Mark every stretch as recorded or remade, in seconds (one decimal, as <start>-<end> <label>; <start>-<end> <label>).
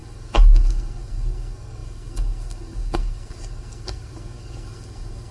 0.0-5.3 remade